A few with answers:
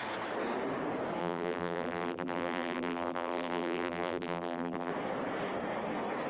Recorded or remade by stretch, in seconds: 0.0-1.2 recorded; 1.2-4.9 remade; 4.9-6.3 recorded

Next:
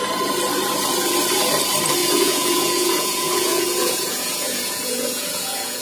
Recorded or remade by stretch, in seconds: 0.0-2.0 recorded; 2.0-5.8 remade

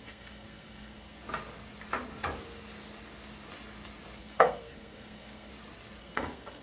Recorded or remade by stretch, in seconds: 0.0-1.2 remade; 1.2-4.2 recorded; 4.2-5.5 remade; 5.5-6.0 recorded; 6.0-6.6 remade

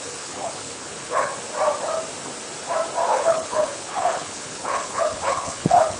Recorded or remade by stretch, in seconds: 0.0-1.3 remade; 1.3-3.1 recorded; 3.1-6.0 remade

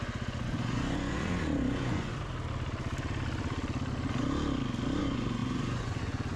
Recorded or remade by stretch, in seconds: 0.0-2.1 remade; 2.1-5.0 recorded; 5.0-6.4 remade

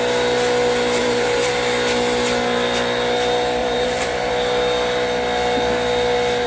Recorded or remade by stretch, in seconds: 0.0-1.0 recorded; 1.0-1.5 remade; 1.5-3.6 recorded; 3.6-4.3 remade; 4.3-6.5 recorded

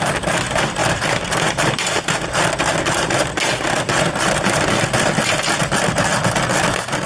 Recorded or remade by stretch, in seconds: 0.0-0.8 recorded; 0.8-1.7 remade; 1.7-7.1 recorded

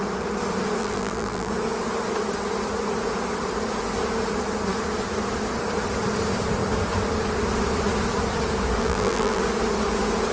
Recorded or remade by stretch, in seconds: 0.0-0.8 recorded; 0.8-1.5 remade; 1.5-8.8 recorded; 8.8-9.4 remade; 9.4-10.3 recorded